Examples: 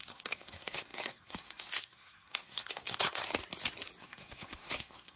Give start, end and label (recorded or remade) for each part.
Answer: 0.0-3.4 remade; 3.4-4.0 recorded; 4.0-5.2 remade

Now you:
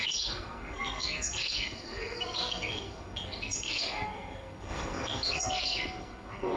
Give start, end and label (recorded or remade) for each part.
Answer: 0.0-6.6 remade

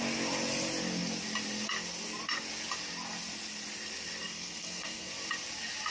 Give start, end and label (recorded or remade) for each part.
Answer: 0.0-4.2 recorded; 4.2-5.1 remade; 5.1-5.9 recorded

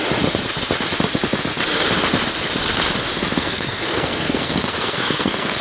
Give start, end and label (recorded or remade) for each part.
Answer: 0.0-3.4 recorded; 3.4-5.6 remade

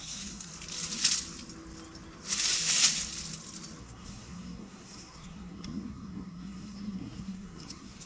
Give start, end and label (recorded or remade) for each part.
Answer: 0.0-0.5 remade; 0.5-3.8 recorded; 3.8-8.1 remade

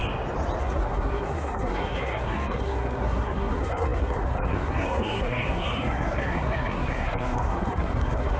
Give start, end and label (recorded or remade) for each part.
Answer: 0.0-0.6 recorded; 0.6-8.4 remade

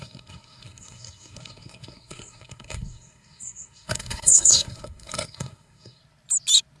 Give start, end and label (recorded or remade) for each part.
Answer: 0.0-6.0 remade; 6.0-6.8 recorded